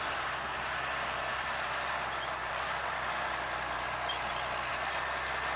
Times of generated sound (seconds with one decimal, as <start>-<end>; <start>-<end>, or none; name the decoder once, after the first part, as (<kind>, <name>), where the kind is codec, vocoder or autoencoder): none